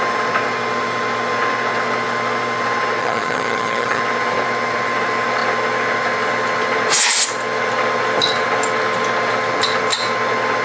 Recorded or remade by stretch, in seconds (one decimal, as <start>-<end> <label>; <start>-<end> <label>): 0.0-3.0 recorded; 3.0-4.0 remade; 4.0-10.6 recorded